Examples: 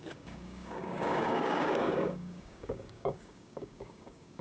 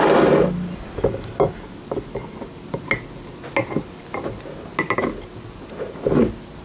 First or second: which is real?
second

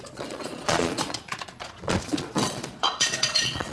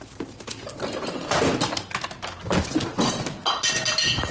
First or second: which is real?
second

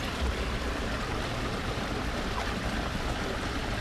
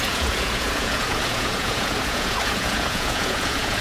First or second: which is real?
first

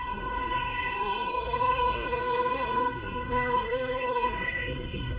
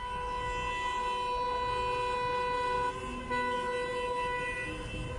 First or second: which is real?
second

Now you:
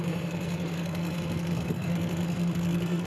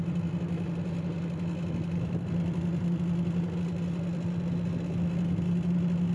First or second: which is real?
second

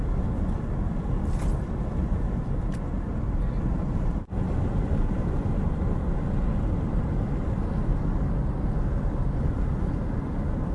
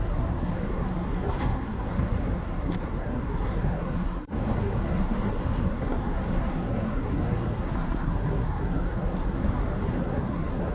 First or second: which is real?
first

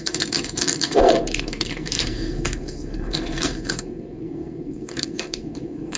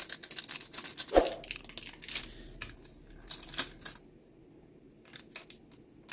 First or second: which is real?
second